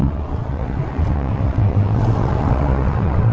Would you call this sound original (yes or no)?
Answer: no